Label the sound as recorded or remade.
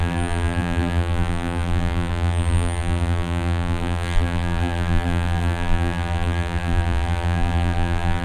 remade